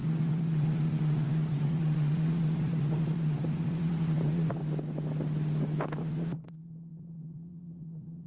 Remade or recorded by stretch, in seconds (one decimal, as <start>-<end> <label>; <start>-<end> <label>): 0.0-4.6 remade; 4.6-6.0 recorded; 6.0-8.3 remade

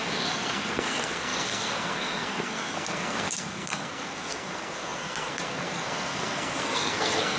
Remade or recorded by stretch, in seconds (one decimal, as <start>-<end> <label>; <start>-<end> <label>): 0.0-7.4 remade

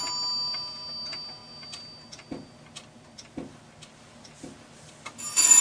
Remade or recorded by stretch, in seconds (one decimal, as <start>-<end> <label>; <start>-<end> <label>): 0.0-5.6 recorded